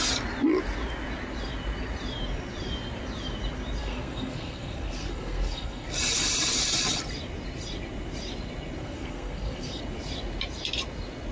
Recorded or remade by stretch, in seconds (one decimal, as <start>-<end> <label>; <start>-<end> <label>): 0.0-3.8 recorded; 3.8-5.9 remade; 5.9-8.8 recorded; 8.8-9.8 remade; 9.8-11.3 recorded